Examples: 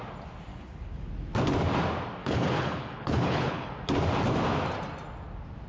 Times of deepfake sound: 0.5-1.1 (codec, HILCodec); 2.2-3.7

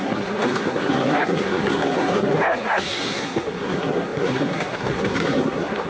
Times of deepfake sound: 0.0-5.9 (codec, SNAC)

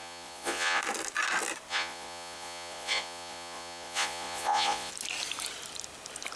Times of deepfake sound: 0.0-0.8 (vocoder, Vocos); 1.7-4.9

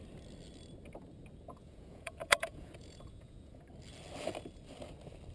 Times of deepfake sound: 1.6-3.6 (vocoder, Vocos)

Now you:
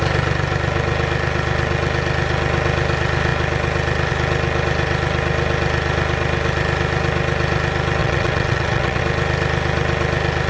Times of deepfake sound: 8.0-9.0 (vocoder, WaveNeXt)

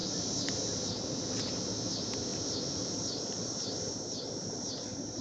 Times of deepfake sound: 0.0-5.2 (vocoder, BigVGAN v2)